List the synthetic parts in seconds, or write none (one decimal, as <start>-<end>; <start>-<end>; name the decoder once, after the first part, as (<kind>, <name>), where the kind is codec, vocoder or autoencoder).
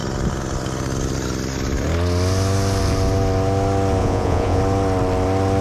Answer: 4.0-4.6 (vocoder, Vocos)